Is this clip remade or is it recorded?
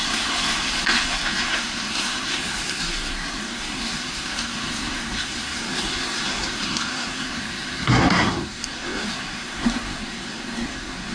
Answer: remade